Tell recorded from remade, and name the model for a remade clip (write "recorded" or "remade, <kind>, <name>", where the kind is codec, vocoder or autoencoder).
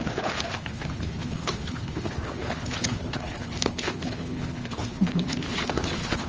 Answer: remade, codec, HILCodec